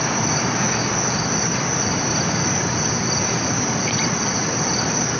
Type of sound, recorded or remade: remade